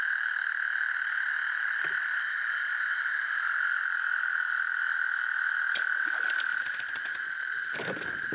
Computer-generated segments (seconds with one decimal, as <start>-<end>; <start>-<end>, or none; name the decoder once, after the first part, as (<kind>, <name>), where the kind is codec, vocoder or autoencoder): 0.4-2.9 (vocoder, BigVGAN v2); 6.5-7.7